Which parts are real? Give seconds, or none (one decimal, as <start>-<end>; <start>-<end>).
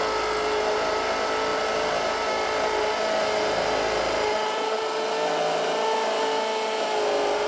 0.0-7.5